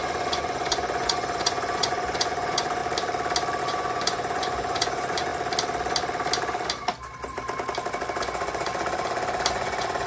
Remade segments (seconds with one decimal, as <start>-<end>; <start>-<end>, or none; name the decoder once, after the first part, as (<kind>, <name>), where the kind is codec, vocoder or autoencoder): 0.0-2.8 (vocoder, Vocos); 3.6-5.3; 8.2-8.7; 9.5-10.1

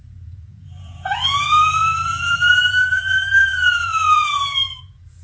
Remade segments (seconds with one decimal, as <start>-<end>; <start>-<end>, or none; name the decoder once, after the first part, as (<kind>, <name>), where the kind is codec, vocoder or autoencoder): 0.0-5.2 (vocoder, Vocos)

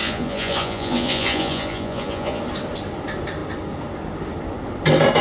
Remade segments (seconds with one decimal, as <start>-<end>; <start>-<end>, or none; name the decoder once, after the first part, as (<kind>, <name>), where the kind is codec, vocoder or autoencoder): 0.0-2.4 (vocoder, Vocos)

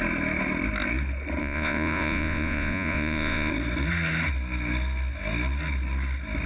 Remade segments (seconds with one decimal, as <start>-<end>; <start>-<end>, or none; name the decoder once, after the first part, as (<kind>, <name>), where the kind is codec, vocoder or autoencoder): 1.4-3.5 (vocoder, Vocos)

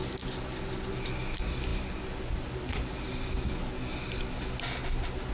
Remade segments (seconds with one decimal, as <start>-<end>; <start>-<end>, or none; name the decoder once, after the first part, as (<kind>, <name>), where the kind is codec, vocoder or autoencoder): none

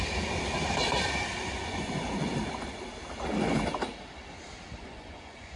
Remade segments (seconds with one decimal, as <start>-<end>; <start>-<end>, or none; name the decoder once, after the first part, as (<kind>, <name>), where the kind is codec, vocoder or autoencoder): 1.4-2.3 (vocoder, Vocos); 4.8-5.6